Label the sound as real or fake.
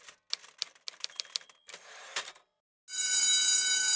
real